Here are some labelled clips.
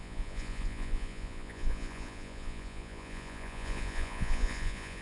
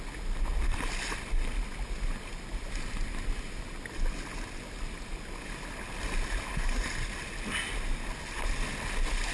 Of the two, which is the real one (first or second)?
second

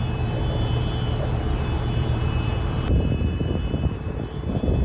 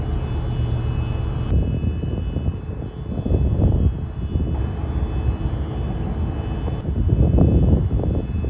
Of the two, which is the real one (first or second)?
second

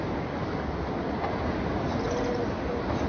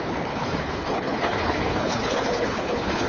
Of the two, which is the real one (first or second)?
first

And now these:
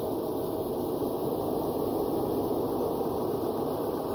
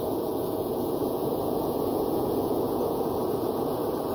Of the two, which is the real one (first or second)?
first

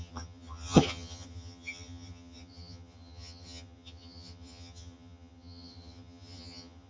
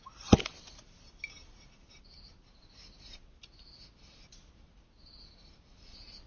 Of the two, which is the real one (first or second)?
second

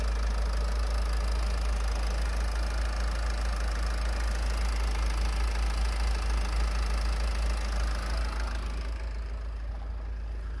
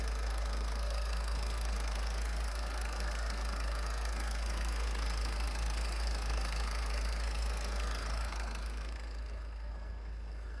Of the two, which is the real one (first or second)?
first